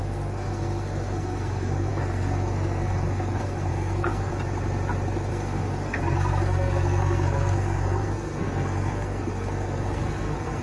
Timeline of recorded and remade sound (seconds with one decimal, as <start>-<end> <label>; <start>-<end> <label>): 0.0-4.3 remade; 4.3-5.3 recorded; 5.3-10.6 remade